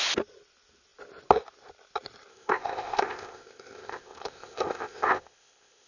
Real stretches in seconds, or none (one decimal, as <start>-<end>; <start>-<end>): 0.0-2.3